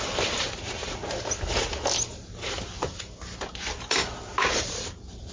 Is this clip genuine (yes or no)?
yes